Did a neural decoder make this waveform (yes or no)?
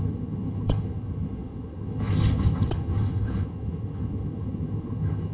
yes